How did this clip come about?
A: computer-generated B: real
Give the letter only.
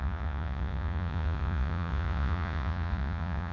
A